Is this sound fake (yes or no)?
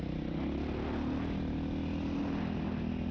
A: no